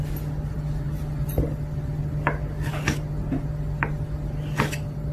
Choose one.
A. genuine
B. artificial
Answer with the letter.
A